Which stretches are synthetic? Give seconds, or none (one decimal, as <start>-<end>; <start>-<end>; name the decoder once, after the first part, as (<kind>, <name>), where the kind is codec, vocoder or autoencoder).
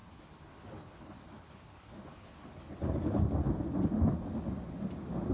0.0-3.2 (codec, HILCodec)